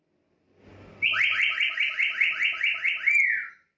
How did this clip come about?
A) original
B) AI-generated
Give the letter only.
A